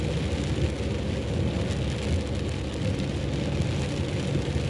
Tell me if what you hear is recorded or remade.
recorded